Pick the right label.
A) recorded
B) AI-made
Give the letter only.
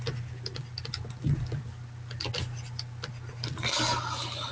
A